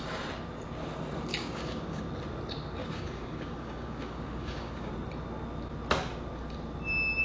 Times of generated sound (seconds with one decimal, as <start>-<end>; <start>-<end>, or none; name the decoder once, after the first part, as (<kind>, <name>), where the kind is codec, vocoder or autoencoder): 1.3-2.0 (codec, DAC); 2.8-4.9